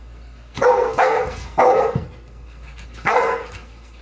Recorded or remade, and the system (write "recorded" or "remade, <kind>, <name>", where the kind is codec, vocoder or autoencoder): remade, codec, SNAC